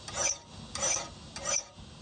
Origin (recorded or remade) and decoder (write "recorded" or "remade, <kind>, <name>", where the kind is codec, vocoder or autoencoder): recorded